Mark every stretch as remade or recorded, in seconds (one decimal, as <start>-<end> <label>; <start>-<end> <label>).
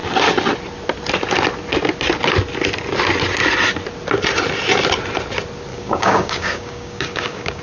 0.0-5.7 recorded; 5.7-7.6 remade